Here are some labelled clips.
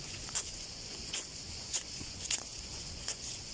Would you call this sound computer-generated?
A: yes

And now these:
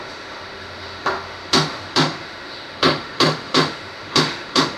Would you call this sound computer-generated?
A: yes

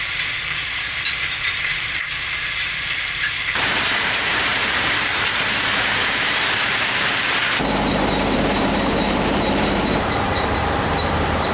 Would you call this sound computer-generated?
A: yes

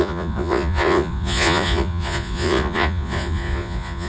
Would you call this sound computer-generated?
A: yes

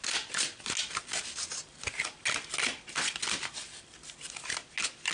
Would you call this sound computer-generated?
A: no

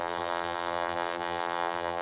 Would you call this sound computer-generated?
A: yes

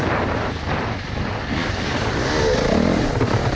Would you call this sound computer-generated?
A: no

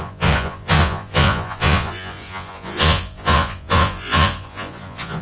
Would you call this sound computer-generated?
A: yes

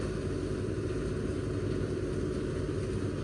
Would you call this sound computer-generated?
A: no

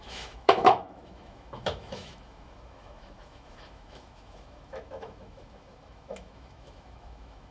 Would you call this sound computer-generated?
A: yes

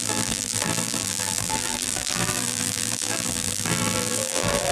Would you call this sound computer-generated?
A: yes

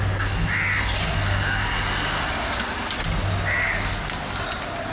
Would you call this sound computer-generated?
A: no